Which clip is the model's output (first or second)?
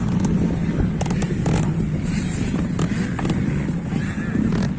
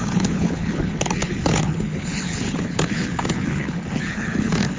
second